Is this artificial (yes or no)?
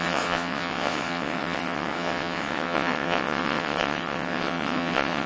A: yes